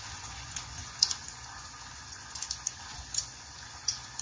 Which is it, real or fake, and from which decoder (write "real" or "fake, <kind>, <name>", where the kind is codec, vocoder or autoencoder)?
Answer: fake, vocoder, Vocos